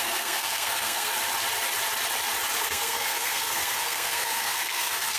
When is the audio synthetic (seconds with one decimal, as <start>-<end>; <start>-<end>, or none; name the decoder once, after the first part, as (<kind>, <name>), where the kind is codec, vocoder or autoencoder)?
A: 0.0-1.1 (codec, SNAC); 2.6-5.2